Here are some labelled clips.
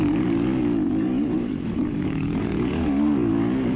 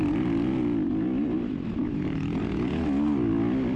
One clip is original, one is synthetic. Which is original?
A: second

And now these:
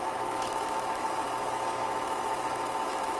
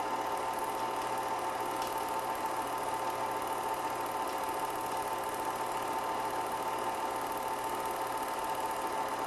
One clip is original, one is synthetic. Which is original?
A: second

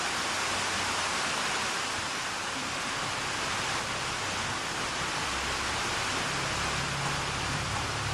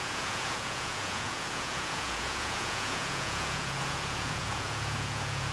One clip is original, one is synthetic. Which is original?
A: first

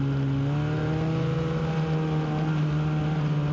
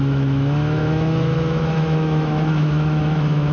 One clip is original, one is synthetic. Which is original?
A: first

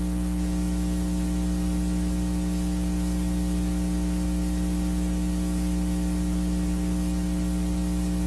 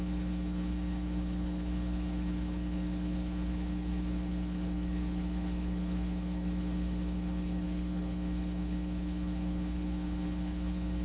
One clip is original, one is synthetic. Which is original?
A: first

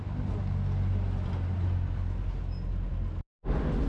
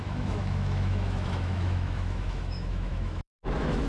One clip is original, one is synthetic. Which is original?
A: first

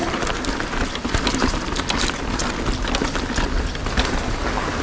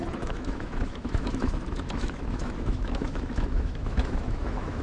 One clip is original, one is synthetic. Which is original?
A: first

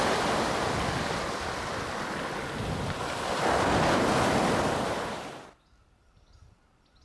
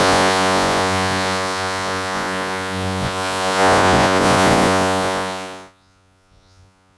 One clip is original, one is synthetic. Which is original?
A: first